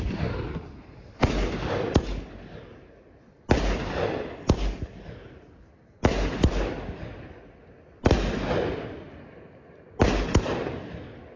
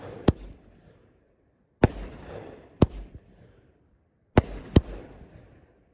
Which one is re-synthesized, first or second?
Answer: second